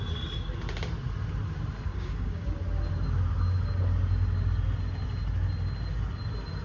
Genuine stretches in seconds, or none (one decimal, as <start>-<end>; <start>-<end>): 0.0-1.9; 2.5-6.6